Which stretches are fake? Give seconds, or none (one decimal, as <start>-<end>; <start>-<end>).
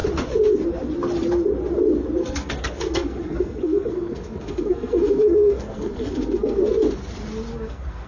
2.2-6.6; 7.5-8.1